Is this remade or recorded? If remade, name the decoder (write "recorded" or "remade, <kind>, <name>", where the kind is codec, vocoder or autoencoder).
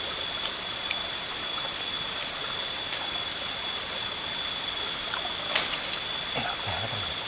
recorded